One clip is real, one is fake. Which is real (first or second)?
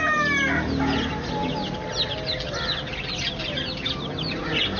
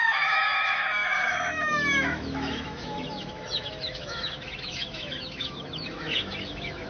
first